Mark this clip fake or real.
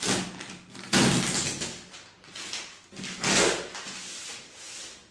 real